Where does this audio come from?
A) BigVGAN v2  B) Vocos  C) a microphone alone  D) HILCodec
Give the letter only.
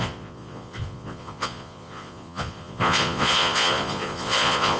B